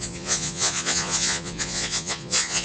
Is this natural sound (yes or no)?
no